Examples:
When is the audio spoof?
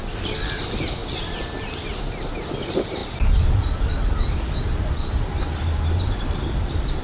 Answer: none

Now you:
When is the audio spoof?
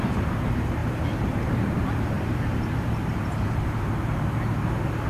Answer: 0.8-3.9 (vocoder, BigVGAN v2)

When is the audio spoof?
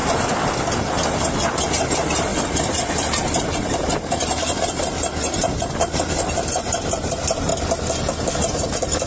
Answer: 1.7-7.5 (vocoder, BigVGAN v2); 8.3-9.1